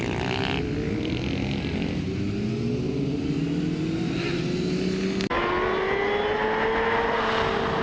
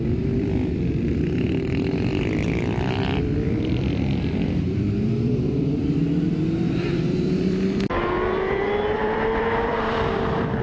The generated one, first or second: second